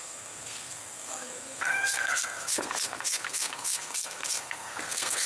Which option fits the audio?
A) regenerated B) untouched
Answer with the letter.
A